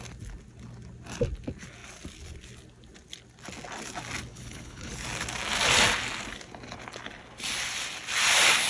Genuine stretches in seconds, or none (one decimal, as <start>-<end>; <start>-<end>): 0.0-4.3; 4.9-8.7